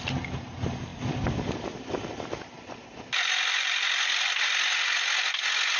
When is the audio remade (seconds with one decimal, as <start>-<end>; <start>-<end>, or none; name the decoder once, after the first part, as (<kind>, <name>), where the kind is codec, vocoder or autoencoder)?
0.9-4.4 (vocoder, BigVGAN v2)

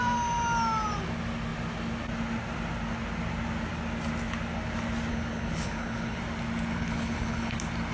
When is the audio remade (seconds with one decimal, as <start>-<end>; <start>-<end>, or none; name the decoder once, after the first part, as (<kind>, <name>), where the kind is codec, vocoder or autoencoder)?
5.1-6.2 (codec, HILCodec); 6.7-7.5

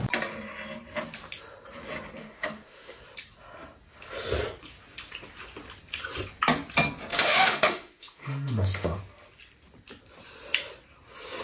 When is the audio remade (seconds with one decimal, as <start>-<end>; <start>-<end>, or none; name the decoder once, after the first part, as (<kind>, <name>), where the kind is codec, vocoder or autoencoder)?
2.2-3.0 (autoencoder, DAC-VAE); 7.1-9.0

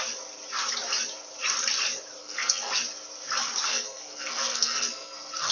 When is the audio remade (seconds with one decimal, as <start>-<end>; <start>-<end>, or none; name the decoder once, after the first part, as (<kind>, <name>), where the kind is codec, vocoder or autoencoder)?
2.2-2.7 (codec, SNAC); 3.7-5.5

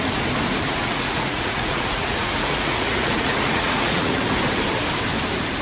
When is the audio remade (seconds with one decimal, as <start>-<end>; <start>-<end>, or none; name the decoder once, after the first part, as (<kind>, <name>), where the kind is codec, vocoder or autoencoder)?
0.8-4.2 (vocoder, Vocos)